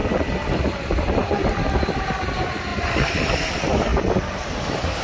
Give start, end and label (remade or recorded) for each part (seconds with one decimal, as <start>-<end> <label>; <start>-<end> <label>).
0.0-0.6 remade; 0.6-1.2 recorded; 1.2-2.1 remade; 2.1-2.7 recorded; 2.7-3.3 remade; 3.3-3.9 recorded; 3.9-4.6 remade; 4.6-5.0 recorded